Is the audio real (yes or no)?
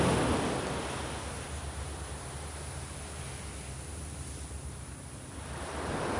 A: yes